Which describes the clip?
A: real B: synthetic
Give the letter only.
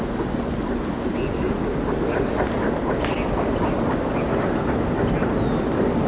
A